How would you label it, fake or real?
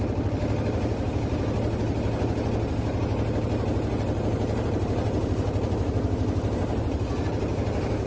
real